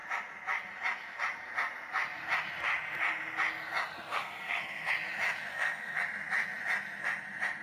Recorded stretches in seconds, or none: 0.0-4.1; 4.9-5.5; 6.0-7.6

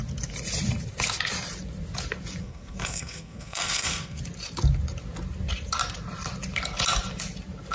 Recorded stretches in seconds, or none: 0.0-2.4; 4.2-7.7

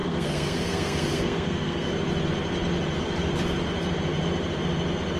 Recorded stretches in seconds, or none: 1.9-5.2